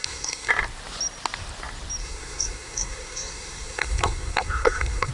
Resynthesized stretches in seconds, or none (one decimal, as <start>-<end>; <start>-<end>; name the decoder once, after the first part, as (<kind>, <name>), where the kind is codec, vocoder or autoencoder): 0.0-0.5 (codec, SNAC); 2.0-5.1